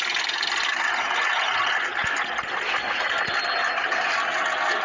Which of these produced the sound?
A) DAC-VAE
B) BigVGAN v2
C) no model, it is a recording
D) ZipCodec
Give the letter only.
C